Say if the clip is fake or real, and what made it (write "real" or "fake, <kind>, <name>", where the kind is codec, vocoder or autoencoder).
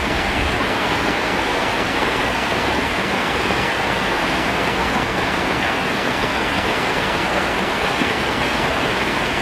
fake, codec, SNAC